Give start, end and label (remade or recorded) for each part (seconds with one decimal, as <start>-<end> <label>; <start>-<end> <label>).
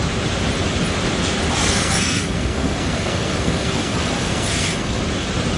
0.0-1.6 recorded; 1.6-5.0 remade; 5.0-5.6 recorded